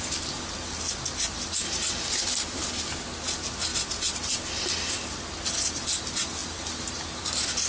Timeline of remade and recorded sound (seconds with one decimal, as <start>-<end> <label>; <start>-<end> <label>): 0.0-7.7 recorded